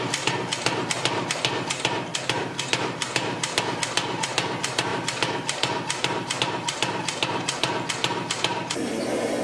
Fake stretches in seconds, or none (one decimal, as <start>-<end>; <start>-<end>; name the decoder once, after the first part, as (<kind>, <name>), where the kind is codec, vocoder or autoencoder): 2.1-3.6 (vocoder, BigVGAN v2); 4.9-6.4